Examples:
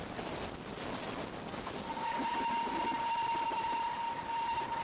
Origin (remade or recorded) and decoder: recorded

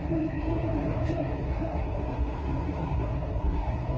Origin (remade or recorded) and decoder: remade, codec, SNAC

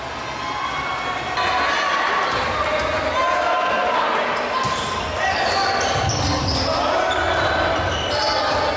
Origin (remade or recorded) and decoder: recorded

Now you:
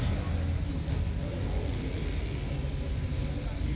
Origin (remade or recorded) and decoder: recorded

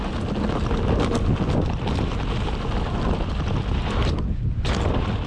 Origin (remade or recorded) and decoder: recorded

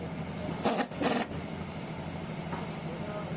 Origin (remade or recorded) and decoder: recorded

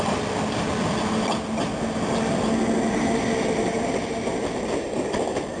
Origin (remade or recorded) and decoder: remade, vocoder, BigVGAN v2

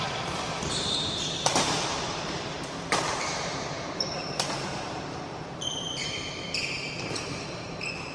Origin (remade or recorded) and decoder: remade, vocoder, BigVGAN v2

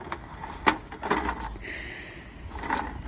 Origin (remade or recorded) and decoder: recorded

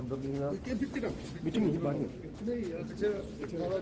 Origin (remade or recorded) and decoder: recorded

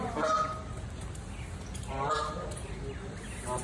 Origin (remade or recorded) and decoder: recorded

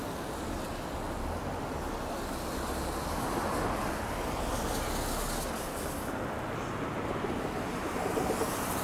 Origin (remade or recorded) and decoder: recorded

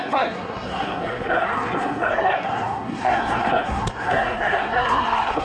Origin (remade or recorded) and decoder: remade, codec, SNAC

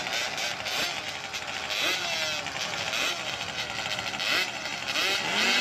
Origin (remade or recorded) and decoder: recorded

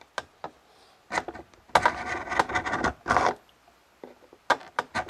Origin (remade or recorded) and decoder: recorded